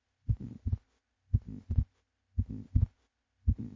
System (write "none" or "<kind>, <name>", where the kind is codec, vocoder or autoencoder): codec, ZipCodec